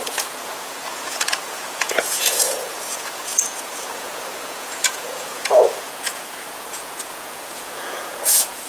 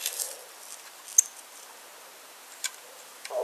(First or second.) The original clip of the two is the second